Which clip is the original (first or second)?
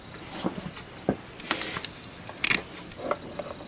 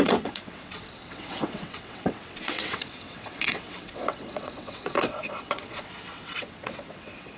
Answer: first